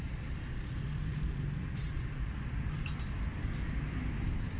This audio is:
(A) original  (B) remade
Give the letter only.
A